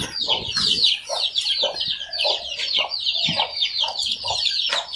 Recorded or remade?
remade